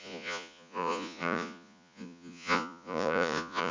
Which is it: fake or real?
fake